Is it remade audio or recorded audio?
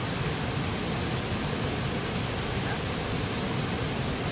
recorded